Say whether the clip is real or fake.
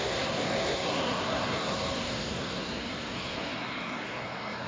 fake